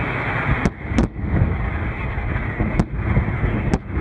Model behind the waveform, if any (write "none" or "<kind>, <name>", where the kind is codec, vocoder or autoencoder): none